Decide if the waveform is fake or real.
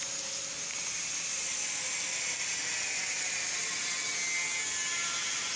real